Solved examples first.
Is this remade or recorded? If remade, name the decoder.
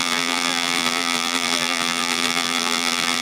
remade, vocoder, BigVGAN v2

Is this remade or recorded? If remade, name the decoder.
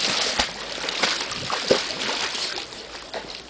recorded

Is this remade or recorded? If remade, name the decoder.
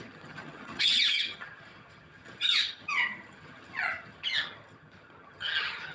remade, vocoder, HiFi-GAN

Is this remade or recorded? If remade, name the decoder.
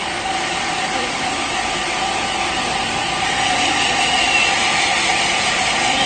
remade, vocoder, BigVGAN v2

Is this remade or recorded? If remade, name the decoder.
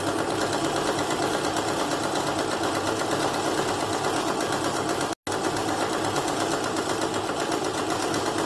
recorded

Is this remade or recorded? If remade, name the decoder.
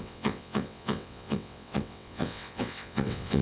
remade, vocoder, WaveNeXt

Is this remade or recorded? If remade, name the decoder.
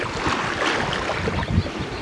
recorded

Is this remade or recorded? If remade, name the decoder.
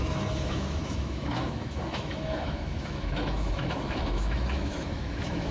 remade, autoencoder, DAC-VAE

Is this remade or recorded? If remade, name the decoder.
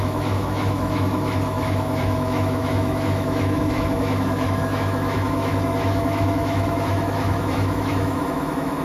remade, autoencoder, DAC-VAE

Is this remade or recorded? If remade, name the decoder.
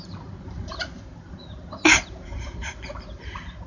recorded